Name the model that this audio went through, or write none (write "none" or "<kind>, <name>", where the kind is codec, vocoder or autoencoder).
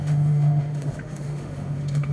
autoencoder, DAC-VAE